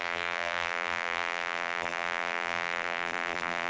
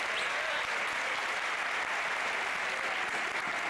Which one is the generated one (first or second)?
first